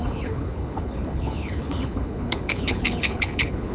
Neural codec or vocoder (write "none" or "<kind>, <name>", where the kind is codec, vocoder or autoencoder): codec, HILCodec